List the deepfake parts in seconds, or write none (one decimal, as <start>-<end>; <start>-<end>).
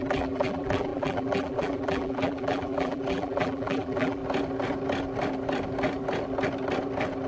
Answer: 0.0-4.2